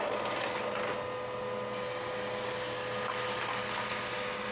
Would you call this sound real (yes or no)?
yes